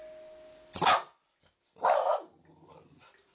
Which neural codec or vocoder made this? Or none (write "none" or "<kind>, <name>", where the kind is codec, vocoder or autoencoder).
none